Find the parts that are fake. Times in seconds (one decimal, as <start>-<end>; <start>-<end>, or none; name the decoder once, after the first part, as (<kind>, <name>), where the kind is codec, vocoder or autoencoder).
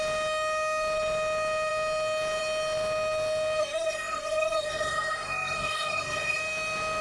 3.6-6.4 (codec, SNAC)